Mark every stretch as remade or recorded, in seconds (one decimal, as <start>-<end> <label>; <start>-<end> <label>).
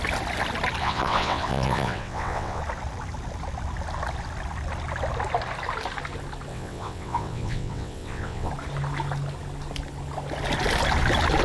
0.0-0.8 recorded; 0.8-2.6 remade; 2.6-6.5 recorded; 6.5-8.5 remade; 8.5-11.4 recorded